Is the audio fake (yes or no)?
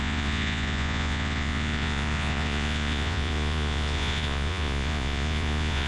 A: yes